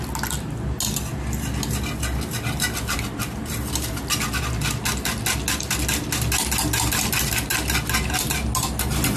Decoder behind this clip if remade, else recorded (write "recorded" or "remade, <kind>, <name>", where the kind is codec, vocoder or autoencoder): recorded